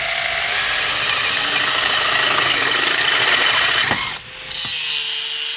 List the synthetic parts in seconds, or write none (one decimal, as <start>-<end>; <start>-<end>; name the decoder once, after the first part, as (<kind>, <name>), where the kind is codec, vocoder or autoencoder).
2.2-3.3 (codec, DAC)